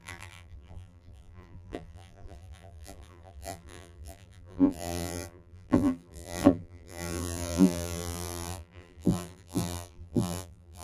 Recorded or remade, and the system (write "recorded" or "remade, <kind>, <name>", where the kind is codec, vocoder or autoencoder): remade, vocoder, BigVGAN v2